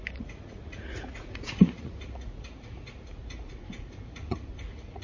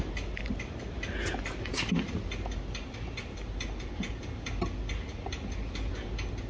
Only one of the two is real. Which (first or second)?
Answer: second